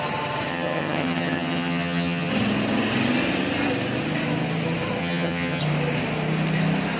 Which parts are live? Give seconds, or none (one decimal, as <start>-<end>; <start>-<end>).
0.0-0.5; 2.3-5.0; 5.6-7.0